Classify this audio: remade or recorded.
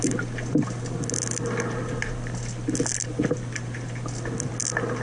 recorded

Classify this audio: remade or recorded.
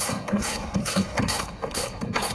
remade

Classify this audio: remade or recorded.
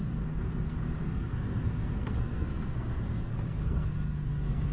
remade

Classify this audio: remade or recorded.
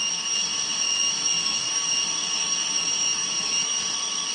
remade